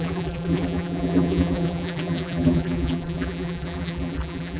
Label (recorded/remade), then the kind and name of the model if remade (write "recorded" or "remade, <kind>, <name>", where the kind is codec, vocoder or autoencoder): remade, vocoder, BigVGAN v2